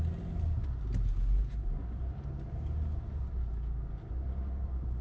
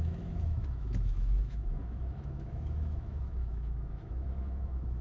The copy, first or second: second